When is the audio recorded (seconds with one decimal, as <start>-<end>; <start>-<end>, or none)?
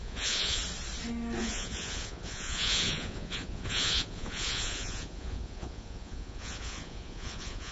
0.6-1.4